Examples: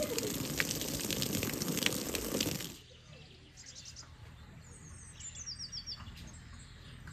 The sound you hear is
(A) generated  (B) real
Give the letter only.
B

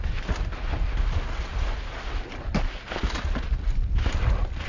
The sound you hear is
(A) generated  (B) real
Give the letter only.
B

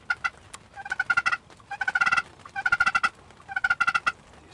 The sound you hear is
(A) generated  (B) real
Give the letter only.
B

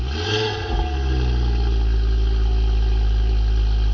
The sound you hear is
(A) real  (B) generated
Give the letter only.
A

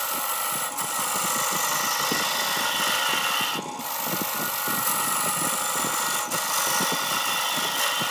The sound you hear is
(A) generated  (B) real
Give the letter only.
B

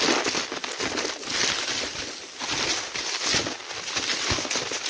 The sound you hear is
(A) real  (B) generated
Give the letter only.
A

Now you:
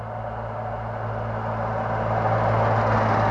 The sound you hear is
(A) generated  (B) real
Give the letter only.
B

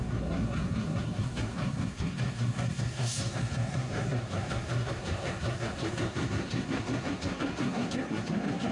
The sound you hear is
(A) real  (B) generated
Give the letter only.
B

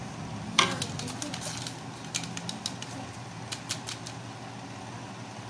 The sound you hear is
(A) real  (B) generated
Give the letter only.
A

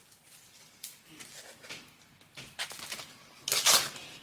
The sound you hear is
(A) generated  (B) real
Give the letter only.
B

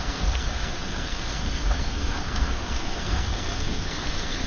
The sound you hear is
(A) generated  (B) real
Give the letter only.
A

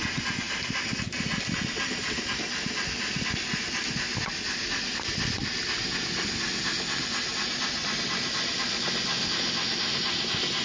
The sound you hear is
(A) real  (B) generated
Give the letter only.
A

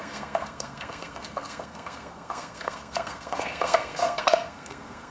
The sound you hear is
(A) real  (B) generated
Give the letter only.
B